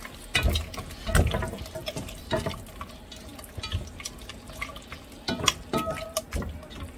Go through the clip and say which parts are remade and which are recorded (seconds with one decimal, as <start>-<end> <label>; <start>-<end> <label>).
0.0-1.8 recorded; 1.8-2.7 remade; 2.7-3.3 recorded; 3.3-4.0 remade; 4.0-5.7 recorded; 5.7-6.2 remade; 6.2-7.0 recorded